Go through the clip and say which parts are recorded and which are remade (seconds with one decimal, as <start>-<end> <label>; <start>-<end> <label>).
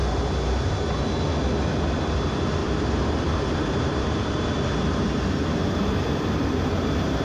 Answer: 0.0-2.6 recorded; 2.6-7.2 remade